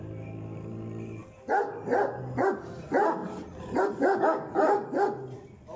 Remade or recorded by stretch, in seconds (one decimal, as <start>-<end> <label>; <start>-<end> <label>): 0.0-5.8 recorded